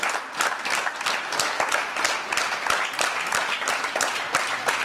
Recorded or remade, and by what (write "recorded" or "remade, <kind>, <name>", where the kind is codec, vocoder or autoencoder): recorded